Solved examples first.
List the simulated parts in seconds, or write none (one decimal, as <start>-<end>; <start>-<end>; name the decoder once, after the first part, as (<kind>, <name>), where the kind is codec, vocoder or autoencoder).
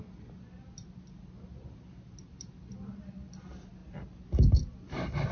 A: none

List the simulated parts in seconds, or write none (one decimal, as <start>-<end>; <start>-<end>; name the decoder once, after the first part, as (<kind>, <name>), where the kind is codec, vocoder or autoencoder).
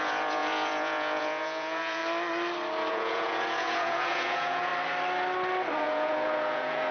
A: 0.0-2.0 (vocoder, Vocos); 2.9-4.7; 5.8-6.9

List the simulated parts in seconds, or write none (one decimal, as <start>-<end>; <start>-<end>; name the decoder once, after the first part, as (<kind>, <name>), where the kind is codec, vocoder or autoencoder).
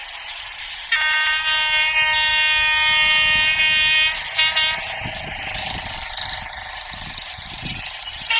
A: none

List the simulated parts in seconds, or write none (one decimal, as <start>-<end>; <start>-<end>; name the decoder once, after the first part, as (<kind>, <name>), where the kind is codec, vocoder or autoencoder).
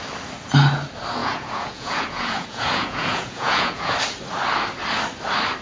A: 1.2-3.9 (vocoder, Vocos)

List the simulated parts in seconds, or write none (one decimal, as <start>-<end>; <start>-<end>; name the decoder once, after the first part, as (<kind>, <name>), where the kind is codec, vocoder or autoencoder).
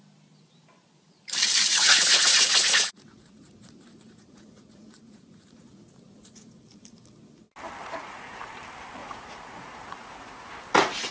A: 1.7-6.6 (vocoder, Vocos); 7.8-8.5; 9.0-10.5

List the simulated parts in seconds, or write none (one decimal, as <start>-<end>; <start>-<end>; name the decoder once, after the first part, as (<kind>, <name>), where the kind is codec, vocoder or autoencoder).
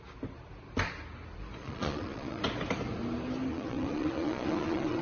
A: 1.6-2.4 (vocoder, Vocos); 3.5-5.0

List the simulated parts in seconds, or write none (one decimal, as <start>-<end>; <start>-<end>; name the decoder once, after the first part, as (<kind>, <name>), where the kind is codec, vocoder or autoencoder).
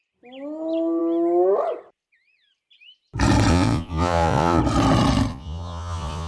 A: 3.5-4.6 (vocoder, Vocos); 5.3-6.3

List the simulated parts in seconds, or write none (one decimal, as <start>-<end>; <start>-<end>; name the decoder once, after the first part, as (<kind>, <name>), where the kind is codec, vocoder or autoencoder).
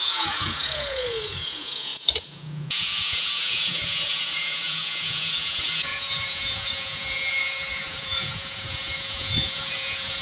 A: 0.0-10.2 (vocoder, Vocos)